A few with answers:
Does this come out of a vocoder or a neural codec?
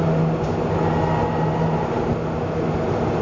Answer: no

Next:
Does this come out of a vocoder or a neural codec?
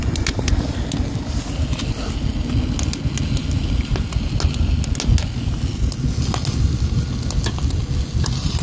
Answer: no